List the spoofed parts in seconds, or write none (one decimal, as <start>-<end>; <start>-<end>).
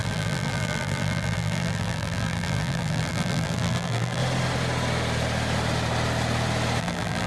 0.0-4.2; 6.8-7.3